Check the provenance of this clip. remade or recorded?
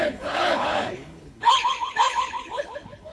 remade